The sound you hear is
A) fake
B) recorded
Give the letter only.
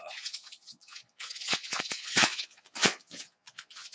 A